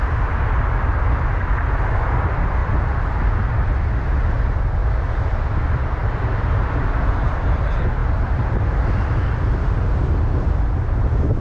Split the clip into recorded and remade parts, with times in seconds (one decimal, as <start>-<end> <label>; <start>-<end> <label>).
0.0-6.0 recorded; 6.0-7.4 remade; 7.4-11.4 recorded